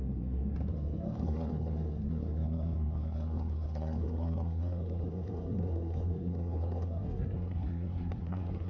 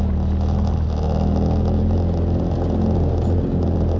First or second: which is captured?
second